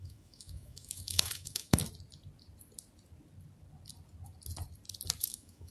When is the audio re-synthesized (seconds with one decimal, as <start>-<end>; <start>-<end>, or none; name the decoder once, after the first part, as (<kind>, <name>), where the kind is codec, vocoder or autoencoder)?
0.0-1.8 (autoencoder, DAC-VAE); 5.2-5.7